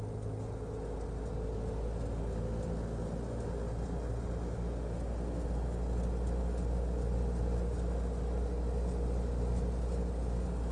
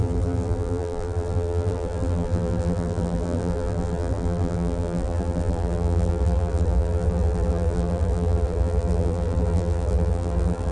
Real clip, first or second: first